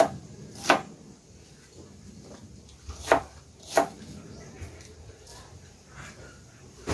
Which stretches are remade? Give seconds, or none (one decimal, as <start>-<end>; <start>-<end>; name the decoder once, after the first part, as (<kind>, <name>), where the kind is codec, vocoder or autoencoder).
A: none